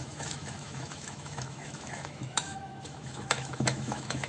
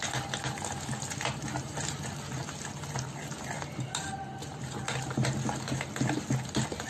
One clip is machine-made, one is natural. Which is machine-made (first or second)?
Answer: first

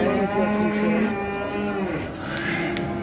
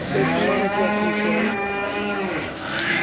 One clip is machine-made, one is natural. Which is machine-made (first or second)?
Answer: second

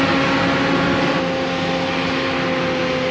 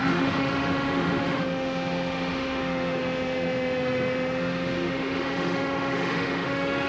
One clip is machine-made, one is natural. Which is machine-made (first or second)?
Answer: second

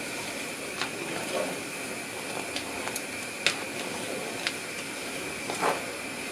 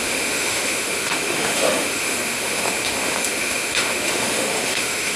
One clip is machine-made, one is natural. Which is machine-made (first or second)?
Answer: second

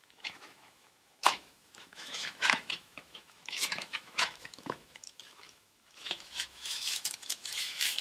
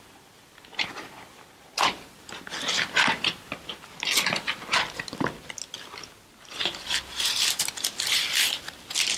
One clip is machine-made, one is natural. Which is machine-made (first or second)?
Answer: first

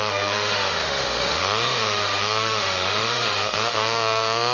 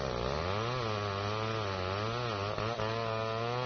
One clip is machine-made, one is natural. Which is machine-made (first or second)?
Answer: first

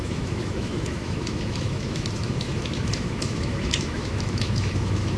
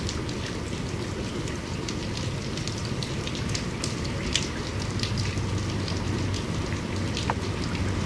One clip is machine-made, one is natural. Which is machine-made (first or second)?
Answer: first